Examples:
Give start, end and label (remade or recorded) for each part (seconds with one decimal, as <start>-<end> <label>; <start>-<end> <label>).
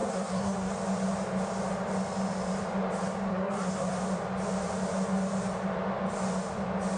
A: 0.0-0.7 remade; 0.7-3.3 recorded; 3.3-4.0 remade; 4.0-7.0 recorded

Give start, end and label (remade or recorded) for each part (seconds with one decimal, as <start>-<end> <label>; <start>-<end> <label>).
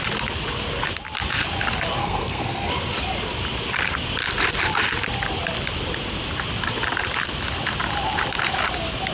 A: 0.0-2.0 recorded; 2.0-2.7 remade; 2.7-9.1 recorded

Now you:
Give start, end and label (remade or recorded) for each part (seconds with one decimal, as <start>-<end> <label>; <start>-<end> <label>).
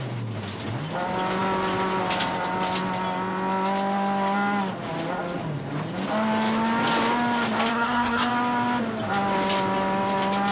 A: 0.0-7.7 recorded; 7.7-8.3 remade; 8.3-10.5 recorded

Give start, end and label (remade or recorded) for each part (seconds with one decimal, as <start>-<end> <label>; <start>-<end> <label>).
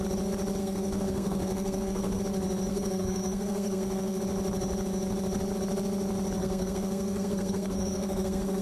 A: 0.0-0.6 recorded; 0.6-2.2 remade; 2.2-2.7 recorded; 2.7-4.2 remade; 4.2-6.4 recorded; 6.4-8.6 remade